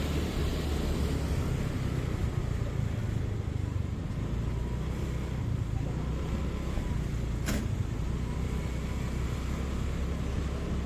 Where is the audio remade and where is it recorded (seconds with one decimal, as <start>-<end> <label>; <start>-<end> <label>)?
0.0-10.9 recorded